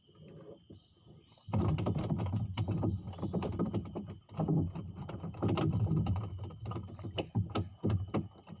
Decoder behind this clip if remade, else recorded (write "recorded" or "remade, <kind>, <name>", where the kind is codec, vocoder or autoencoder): recorded